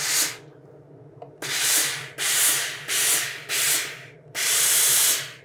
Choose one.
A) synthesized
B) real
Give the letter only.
B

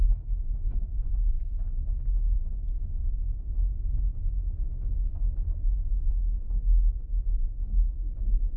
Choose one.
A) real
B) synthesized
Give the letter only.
B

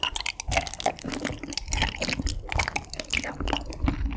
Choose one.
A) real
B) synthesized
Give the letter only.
A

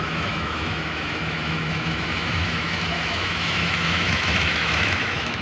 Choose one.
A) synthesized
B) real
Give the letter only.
A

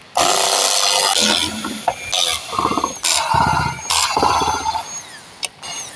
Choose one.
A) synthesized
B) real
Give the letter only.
B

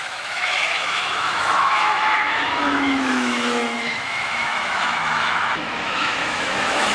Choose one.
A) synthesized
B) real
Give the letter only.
A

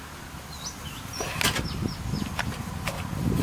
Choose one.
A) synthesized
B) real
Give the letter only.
B